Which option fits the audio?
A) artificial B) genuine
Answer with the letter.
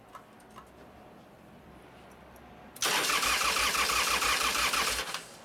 B